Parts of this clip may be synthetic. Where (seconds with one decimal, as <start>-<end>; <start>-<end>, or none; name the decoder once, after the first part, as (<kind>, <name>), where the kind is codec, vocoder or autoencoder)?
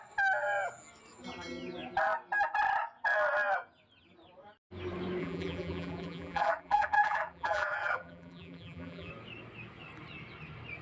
5.2-9.1 (vocoder, BigVGAN v2)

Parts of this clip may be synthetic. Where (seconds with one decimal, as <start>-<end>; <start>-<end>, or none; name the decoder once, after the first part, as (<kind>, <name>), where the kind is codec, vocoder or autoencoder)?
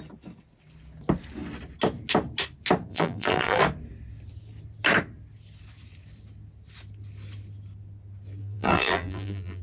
2.9-3.6 (vocoder, BigVGAN v2); 8.4-9.6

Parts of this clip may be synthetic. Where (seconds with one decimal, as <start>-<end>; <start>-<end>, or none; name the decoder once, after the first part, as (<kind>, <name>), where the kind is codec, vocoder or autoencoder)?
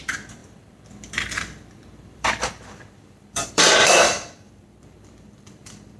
0.0-6.0 (vocoder, BigVGAN v2)